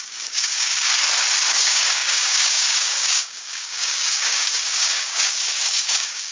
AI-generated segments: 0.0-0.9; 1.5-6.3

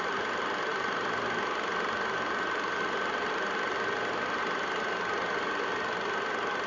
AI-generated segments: none